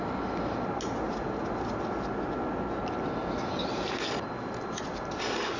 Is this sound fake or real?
real